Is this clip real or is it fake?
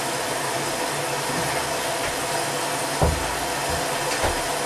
real